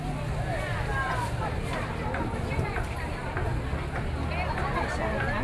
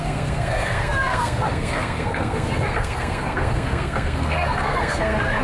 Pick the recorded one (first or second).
first